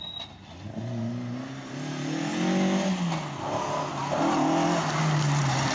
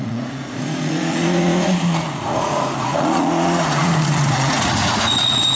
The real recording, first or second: first